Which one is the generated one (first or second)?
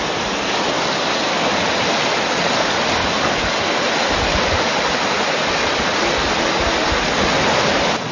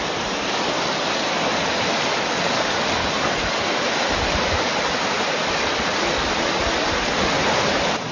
second